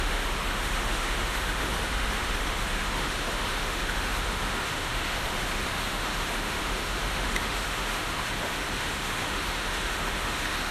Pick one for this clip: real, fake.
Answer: fake